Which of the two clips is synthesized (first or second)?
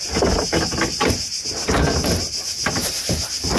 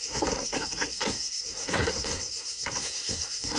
second